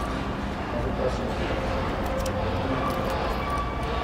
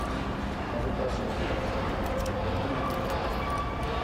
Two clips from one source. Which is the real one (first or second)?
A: first